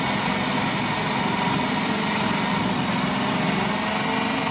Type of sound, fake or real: real